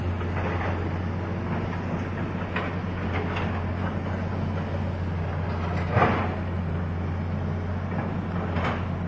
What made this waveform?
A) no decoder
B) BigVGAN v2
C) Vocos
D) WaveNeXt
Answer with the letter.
A